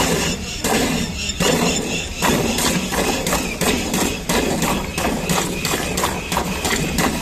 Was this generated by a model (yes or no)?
no